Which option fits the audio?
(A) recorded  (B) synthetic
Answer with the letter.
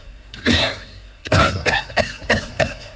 B